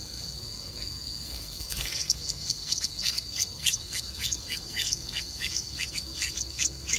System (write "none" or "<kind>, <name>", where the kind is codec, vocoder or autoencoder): codec, SNAC